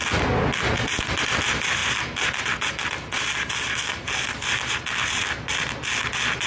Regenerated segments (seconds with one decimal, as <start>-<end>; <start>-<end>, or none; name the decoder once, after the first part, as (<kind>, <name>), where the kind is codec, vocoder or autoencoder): none